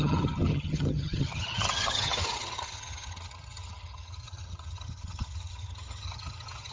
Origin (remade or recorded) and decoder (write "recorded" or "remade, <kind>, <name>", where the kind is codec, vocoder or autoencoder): remade, vocoder, HiFi-GAN